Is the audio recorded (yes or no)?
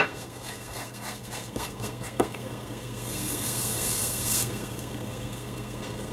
no